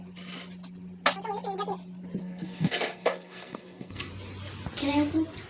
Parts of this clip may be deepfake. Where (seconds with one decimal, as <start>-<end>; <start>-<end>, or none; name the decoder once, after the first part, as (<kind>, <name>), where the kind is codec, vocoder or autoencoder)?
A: 2.2-4.1 (codec, SNAC)